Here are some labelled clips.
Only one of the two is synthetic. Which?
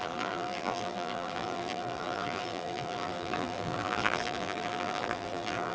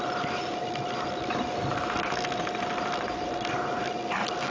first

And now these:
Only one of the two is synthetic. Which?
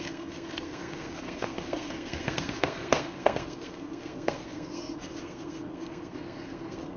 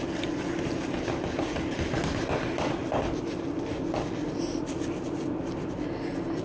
first